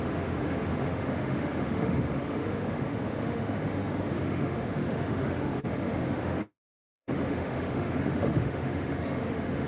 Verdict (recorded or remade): remade